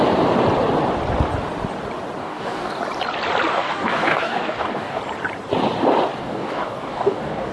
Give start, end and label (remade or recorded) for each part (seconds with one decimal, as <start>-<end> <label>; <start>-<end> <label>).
0.0-2.2 recorded; 2.2-2.8 remade; 2.8-3.5 recorded; 3.5-5.0 remade; 5.0-6.2 recorded; 6.2-7.5 remade